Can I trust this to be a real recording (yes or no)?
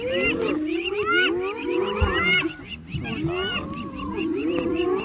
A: yes